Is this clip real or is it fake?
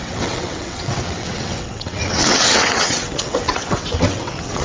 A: fake